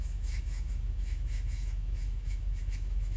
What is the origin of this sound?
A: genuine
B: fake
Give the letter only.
B